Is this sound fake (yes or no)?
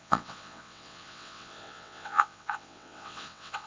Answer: yes